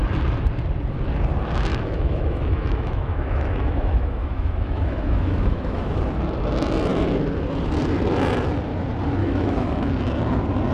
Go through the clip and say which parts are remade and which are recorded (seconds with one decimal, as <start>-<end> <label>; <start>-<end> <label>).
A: 0.0-1.7 recorded; 1.7-6.0 remade; 6.0-9.2 recorded; 9.2-9.9 remade; 9.9-10.7 recorded